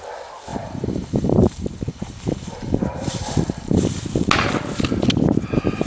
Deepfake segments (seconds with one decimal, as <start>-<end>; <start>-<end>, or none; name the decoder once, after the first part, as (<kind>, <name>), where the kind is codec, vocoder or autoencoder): 0.5-4.0 (vocoder, BigVGAN v2)